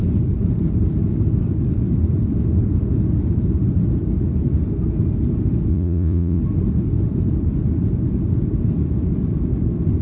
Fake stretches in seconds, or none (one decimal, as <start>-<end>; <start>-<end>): 5.7-6.4